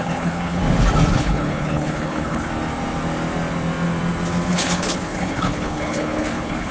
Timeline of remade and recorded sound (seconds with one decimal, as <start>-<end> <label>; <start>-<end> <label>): 0.0-0.6 remade; 0.6-1.1 recorded; 1.1-2.5 remade; 2.5-4.5 recorded; 4.5-6.7 remade